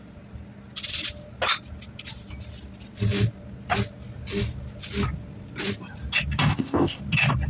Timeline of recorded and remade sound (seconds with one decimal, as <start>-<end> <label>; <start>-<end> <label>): 0.0-6.5 recorded; 6.5-7.0 remade; 7.0-7.5 recorded